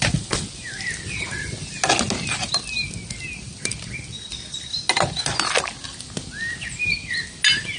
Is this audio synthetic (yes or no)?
no